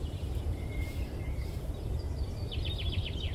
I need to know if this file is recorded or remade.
remade